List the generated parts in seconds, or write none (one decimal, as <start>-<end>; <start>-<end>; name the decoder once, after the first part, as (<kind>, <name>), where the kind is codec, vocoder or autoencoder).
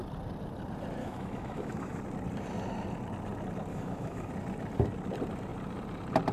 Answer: 1.0-2.0 (autoencoder, DAC-VAE); 3.7-4.3